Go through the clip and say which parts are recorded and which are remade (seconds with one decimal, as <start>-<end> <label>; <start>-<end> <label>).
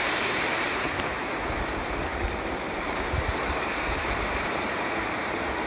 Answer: 0.0-2.1 remade; 2.1-2.7 recorded; 2.7-5.7 remade